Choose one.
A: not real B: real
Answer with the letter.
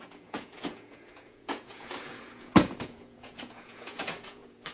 A